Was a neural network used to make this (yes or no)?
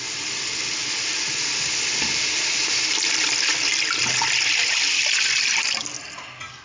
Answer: no